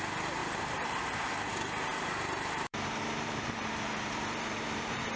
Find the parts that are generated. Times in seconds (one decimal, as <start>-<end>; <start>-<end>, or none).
0.4-1.3; 1.9-5.2